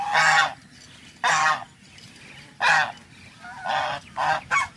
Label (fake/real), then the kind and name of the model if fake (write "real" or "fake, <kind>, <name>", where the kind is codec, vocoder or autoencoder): real